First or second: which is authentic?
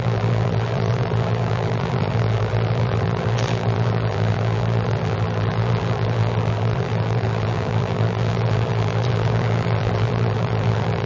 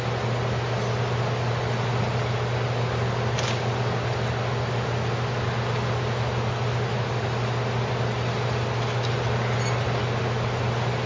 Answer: second